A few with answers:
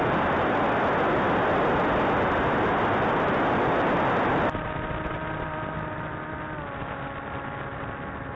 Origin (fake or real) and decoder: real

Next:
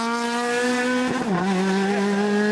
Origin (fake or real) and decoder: real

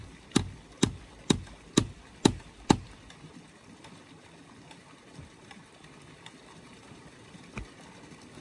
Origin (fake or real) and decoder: fake, vocoder, BigVGAN v2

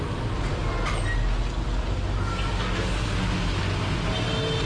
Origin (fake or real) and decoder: real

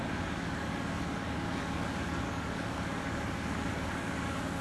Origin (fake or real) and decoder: fake, codec, DAC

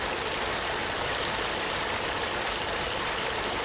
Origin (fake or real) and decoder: real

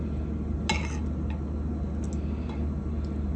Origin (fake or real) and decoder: real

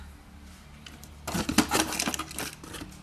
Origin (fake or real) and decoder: real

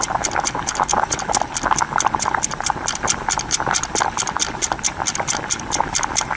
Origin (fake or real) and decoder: real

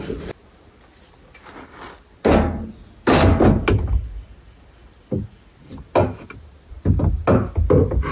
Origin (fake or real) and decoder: real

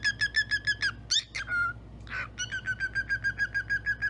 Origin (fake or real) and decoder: real